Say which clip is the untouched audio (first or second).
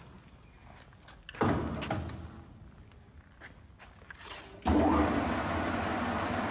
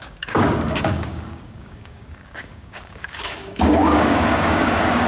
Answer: first